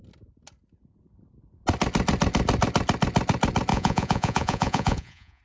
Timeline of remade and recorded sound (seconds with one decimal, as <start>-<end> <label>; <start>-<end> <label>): 0.0-3.7 recorded; 3.7-5.4 remade